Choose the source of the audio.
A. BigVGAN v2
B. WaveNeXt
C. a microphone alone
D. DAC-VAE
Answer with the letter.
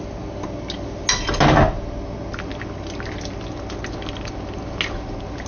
C